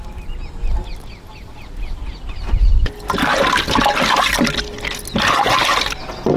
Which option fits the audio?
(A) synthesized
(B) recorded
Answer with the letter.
B